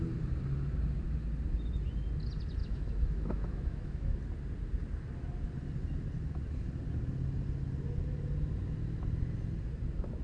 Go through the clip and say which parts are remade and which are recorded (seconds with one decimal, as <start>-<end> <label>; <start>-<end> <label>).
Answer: 0.0-2.6 recorded; 2.6-4.2 remade; 4.2-10.2 recorded

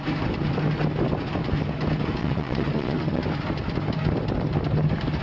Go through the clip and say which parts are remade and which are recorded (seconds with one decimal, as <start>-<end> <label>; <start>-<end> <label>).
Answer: 0.0-2.2 recorded; 2.2-3.2 remade; 3.2-5.2 recorded

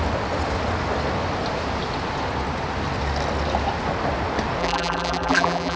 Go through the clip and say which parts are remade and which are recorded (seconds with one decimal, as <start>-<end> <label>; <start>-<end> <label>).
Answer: 0.0-4.6 recorded; 4.6-5.8 remade

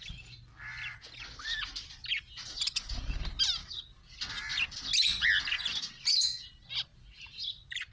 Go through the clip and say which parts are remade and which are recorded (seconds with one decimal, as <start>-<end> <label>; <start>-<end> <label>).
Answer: 0.0-7.9 recorded

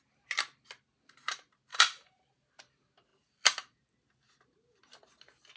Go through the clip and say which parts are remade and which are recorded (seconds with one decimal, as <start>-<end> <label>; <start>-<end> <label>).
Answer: 0.0-1.7 recorded; 1.7-2.6 remade; 2.6-3.1 recorded; 3.1-3.8 remade; 3.8-5.6 recorded